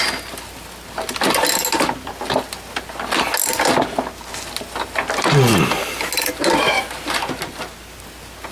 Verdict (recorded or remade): recorded